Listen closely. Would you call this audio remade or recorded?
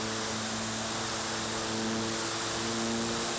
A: recorded